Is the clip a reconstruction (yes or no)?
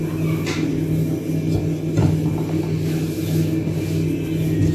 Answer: no